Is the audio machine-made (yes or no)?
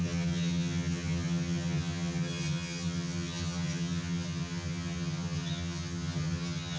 yes